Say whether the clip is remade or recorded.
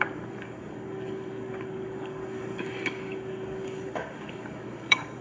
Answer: remade